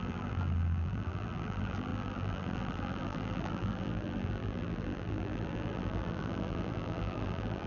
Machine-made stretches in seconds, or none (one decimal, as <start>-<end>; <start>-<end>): 0.0-7.7